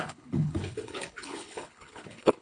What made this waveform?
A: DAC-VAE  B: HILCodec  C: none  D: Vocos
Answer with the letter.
B